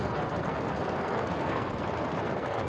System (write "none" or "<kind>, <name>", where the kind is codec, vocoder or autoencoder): codec, SNAC